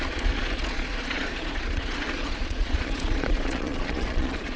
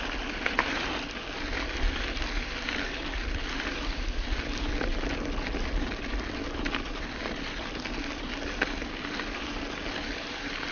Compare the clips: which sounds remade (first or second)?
first